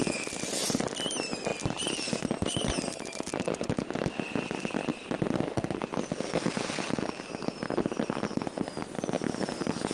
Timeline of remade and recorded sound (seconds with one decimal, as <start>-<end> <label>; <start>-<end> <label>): 0.0-9.9 recorded